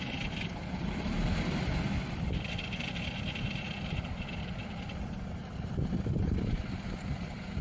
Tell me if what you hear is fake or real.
fake